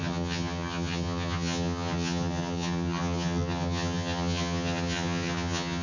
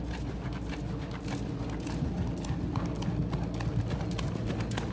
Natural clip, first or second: second